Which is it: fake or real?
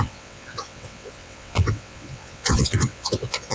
fake